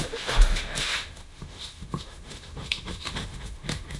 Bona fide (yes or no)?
no